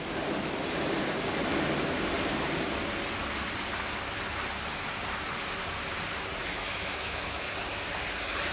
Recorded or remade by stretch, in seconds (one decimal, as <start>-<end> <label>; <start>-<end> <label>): 0.0-6.4 recorded; 6.4-7.5 remade; 7.5-8.5 recorded